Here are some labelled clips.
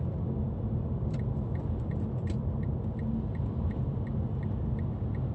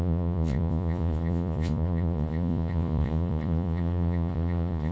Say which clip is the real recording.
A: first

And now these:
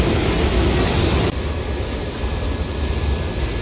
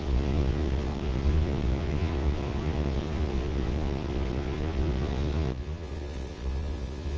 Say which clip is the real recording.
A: first